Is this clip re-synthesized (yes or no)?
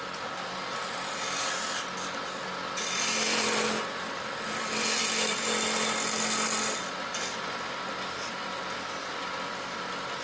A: no